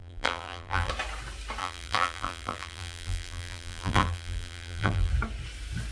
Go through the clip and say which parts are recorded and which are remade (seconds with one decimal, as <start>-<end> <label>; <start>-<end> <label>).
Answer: 0.0-0.9 remade; 0.9-1.6 recorded; 1.6-5.1 remade; 5.1-5.9 recorded